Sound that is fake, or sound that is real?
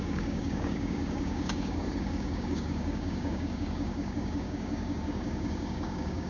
fake